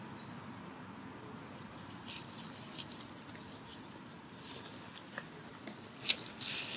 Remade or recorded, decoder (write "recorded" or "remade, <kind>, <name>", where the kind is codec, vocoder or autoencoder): recorded